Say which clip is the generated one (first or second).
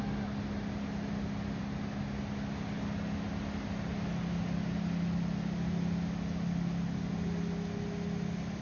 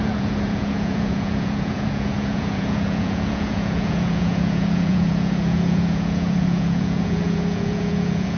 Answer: second